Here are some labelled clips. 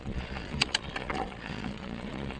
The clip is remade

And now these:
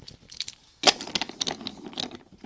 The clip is recorded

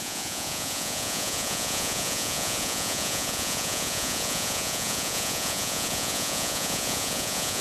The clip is remade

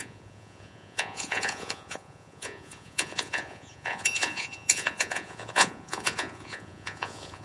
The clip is remade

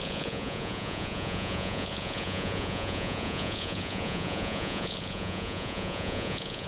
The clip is remade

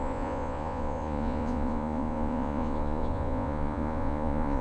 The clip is remade